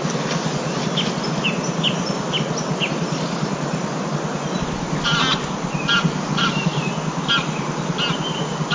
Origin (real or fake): real